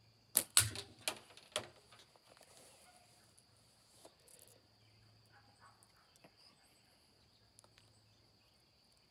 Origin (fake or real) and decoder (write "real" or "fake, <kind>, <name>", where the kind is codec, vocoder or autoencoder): real